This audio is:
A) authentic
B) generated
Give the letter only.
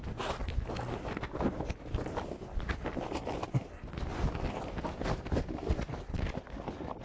A